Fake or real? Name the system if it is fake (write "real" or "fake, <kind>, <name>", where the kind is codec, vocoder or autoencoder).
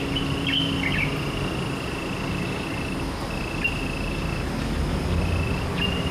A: real